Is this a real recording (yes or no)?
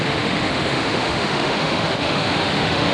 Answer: no